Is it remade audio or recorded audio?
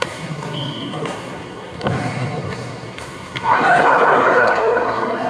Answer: remade